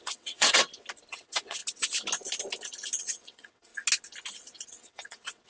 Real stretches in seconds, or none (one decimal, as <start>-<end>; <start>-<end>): 0.6-1.1; 1.6-3.0; 3.7-4.7